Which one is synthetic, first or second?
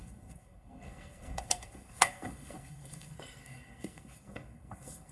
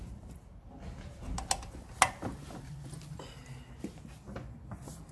first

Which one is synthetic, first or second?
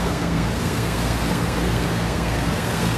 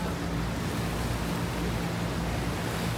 first